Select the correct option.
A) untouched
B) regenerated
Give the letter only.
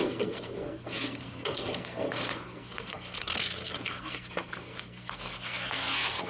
B